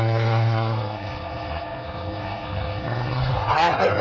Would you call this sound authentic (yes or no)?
no